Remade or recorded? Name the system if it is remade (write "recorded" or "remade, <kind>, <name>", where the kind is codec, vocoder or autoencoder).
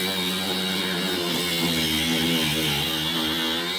recorded